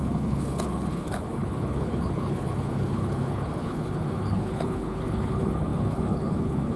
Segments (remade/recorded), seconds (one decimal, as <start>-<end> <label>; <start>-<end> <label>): 0.0-6.8 remade